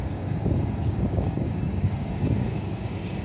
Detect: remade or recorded remade